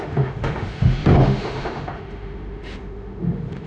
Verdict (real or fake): fake